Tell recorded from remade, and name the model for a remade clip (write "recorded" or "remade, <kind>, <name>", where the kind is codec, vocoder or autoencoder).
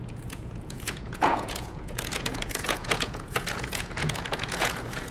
remade, vocoder, Vocos